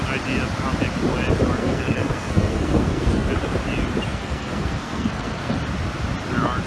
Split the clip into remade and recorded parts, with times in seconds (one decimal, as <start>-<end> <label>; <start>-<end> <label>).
0.0-1.6 recorded; 1.6-3.3 remade; 3.3-4.1 recorded; 4.1-5.6 remade; 5.6-6.7 recorded